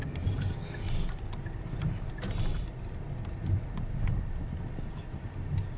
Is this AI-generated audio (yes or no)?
no